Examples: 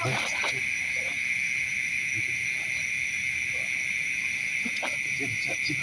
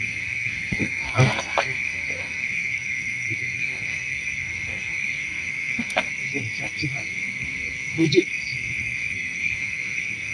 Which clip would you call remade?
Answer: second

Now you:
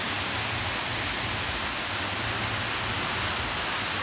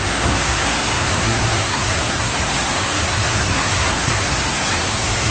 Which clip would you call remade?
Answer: second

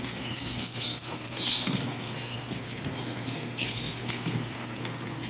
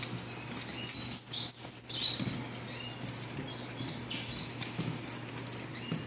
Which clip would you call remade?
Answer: first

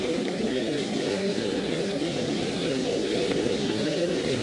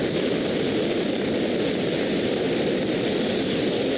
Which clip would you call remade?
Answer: first